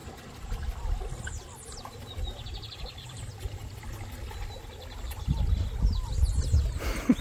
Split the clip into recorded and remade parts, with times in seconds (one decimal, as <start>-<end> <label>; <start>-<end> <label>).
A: 0.0-7.2 recorded